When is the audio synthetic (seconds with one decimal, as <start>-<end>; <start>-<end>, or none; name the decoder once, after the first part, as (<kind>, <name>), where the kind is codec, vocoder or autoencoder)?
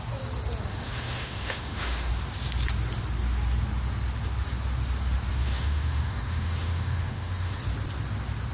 0.7-2.1 (autoencoder, DAC-VAE); 5.3-7.6